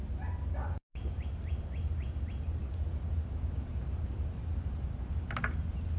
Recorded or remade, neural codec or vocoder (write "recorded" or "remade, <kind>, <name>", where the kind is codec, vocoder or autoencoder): recorded